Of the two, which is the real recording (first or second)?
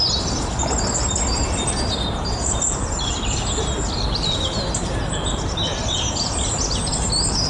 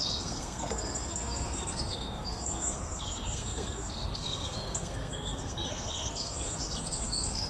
first